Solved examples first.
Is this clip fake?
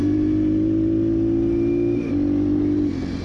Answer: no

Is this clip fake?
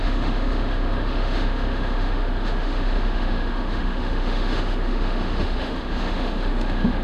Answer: yes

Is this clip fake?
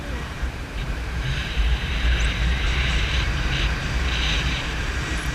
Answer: yes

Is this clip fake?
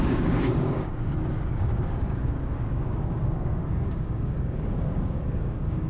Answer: yes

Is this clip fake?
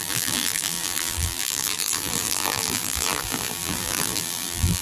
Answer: yes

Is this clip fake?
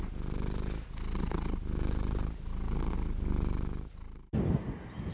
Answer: no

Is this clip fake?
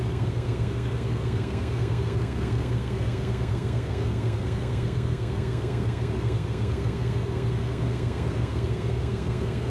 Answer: yes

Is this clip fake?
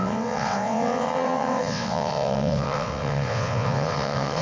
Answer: yes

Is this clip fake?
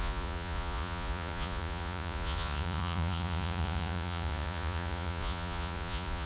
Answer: yes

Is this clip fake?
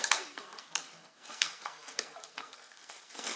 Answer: yes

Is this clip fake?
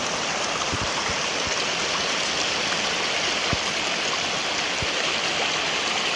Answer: no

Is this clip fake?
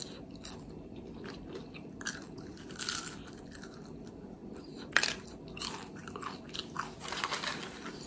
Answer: no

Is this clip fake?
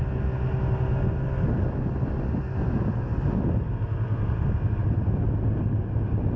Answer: no